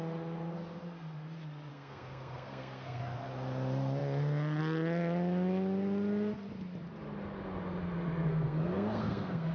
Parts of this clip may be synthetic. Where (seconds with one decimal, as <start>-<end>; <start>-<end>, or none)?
1.7-3.0; 8.3-9.5